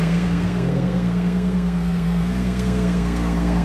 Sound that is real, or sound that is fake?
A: fake